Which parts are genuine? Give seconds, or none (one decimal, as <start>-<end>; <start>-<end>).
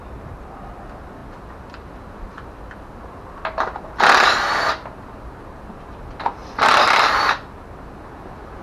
0.0-6.4; 7.1-8.6